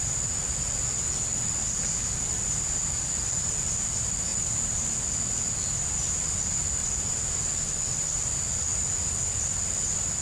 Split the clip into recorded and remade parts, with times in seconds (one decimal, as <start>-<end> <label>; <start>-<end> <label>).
0.0-10.2 recorded